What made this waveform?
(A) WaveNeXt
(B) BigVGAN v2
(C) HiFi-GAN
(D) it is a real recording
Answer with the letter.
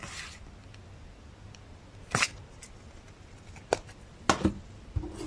D